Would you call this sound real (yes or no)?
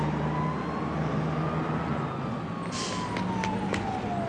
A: yes